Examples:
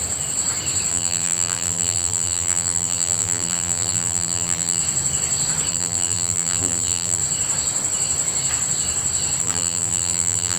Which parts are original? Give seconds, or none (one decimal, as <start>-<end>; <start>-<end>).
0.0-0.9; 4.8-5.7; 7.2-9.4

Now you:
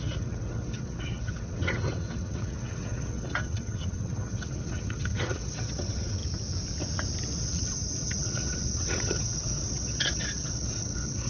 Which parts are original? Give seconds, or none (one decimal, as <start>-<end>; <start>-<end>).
6.2-7.4

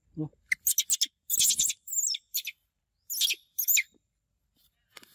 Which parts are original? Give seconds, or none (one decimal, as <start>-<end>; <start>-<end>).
0.0-5.1

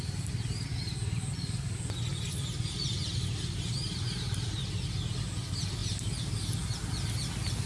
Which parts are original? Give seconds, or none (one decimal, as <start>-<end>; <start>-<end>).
0.0-7.7